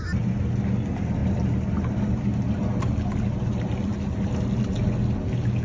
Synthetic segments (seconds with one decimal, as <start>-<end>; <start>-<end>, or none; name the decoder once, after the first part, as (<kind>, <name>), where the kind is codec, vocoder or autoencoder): none